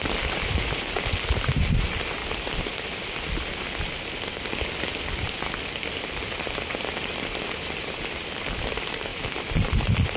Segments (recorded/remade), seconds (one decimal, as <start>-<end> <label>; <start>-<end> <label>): 0.0-2.2 remade; 2.2-7.1 recorded; 7.1-10.2 remade